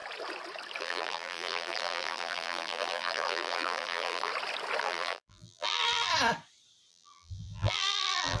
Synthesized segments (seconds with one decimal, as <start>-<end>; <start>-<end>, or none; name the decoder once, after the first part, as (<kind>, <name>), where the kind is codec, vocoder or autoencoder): 0.8-4.3 (vocoder, BigVGAN v2); 4.8-6.1; 6.9-8.4